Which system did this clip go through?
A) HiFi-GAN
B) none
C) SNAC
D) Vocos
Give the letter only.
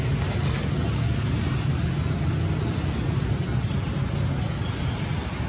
B